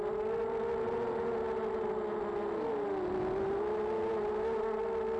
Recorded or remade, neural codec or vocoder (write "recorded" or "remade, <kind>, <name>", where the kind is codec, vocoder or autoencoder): recorded